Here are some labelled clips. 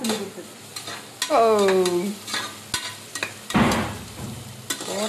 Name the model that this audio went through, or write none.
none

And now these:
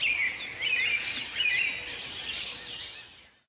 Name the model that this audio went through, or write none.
none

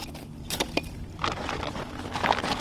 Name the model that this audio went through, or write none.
none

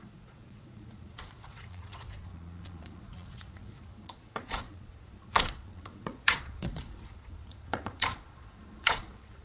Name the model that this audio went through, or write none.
vocoder, Vocos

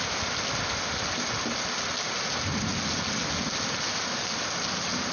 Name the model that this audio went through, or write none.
none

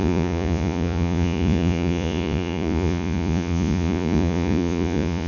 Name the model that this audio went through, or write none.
vocoder, Vocos